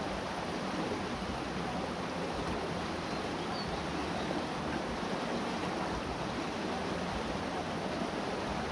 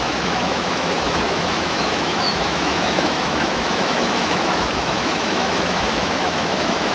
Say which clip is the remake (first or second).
second